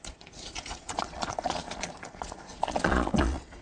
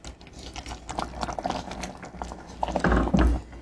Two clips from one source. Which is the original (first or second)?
second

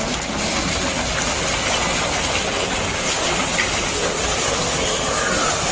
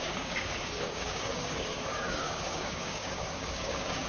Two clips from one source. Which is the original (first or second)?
first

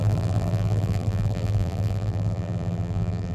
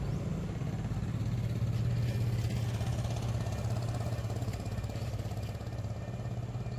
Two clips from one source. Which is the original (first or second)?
second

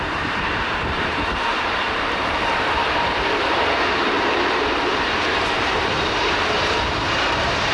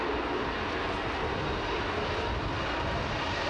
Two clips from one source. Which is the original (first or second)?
second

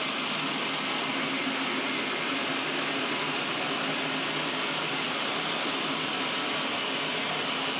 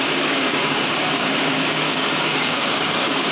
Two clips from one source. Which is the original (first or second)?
first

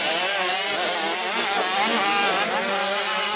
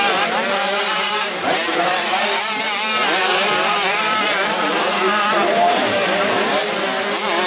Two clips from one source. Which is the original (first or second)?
first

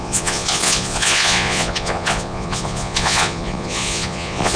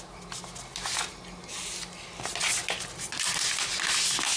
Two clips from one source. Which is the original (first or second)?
second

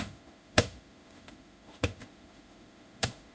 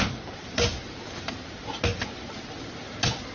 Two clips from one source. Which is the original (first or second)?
second